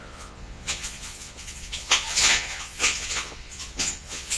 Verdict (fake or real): fake